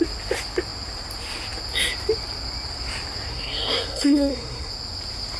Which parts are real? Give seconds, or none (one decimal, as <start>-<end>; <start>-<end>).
0.0-3.3; 4.7-5.4